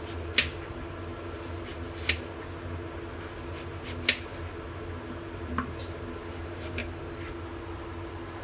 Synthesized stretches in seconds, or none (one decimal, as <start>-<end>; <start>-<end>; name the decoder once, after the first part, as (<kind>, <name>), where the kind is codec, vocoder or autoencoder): none